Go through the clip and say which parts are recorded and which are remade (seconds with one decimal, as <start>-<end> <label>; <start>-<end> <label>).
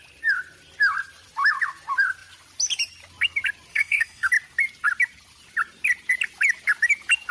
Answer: 0.0-3.7 recorded; 3.7-4.3 remade; 4.3-7.3 recorded